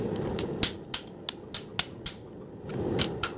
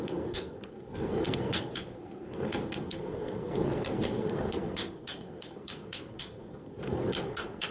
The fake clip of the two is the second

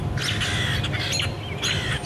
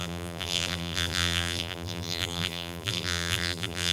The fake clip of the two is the second